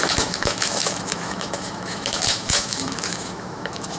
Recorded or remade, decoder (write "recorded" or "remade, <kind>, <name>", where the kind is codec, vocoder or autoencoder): remade, autoencoder, DAC-VAE